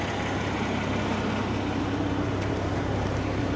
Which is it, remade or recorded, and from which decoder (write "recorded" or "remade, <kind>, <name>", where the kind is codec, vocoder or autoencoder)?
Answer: recorded